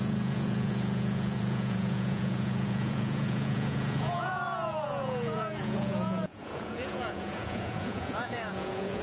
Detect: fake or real fake